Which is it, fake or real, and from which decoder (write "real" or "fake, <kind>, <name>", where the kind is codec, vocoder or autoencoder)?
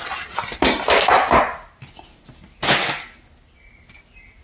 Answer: real